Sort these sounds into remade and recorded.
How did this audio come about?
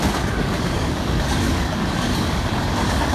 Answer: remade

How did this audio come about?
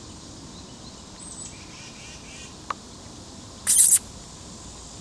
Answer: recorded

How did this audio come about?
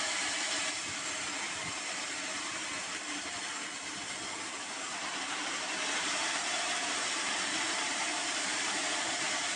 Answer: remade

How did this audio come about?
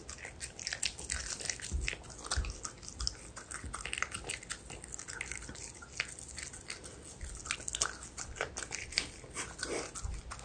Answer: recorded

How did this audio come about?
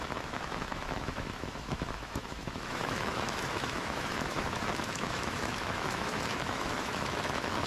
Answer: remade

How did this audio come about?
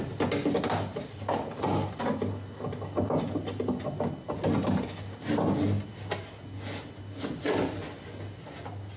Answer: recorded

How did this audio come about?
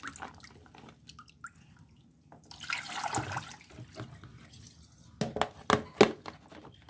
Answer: recorded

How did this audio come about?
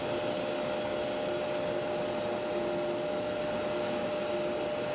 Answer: recorded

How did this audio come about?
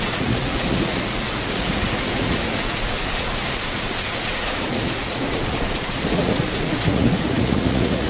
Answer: remade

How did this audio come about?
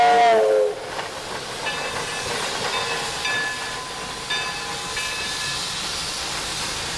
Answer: recorded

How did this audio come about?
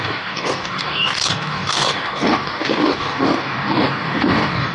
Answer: remade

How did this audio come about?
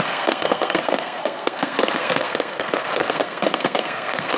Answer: remade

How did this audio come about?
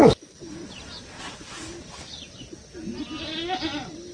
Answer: recorded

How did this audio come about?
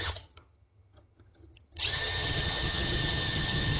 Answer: remade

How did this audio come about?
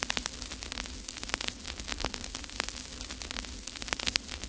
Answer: recorded